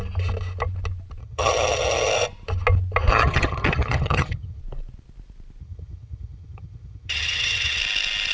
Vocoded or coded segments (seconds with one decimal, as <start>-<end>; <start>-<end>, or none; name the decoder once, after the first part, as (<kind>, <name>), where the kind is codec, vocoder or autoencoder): 1.2-2.1 (vocoder, HiFi-GAN); 3.1-4.6; 5.6-7.8